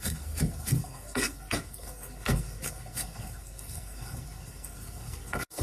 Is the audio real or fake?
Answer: fake